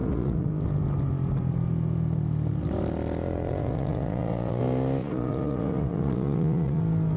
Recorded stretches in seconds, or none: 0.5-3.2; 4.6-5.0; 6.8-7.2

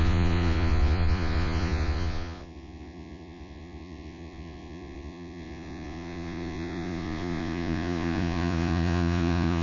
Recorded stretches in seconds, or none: none

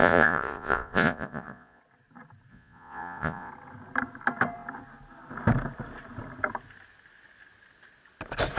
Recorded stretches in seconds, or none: 1.8-2.5; 3.5-8.6

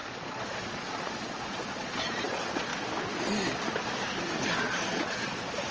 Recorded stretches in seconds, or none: 2.7-4.5

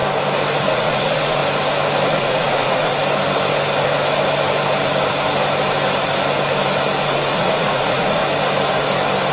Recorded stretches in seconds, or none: 0.0-0.7; 1.4-2.1; 2.9-7.0; 8.2-9.3

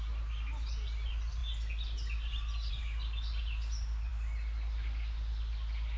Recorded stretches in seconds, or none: 0.0-6.0